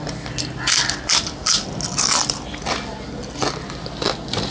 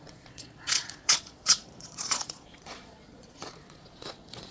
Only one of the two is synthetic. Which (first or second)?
second